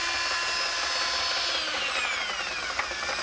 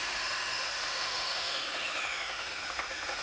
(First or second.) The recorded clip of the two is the first